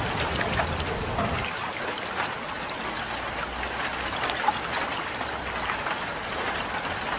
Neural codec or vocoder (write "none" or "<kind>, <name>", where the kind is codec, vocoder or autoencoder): none